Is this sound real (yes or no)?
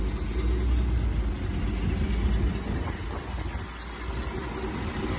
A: yes